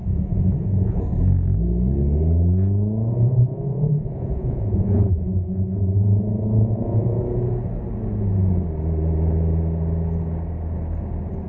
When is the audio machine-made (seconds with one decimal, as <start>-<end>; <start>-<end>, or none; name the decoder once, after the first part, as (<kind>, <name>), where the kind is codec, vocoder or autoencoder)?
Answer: 0.0-1.0 (vocoder, Vocos); 3.1-7.2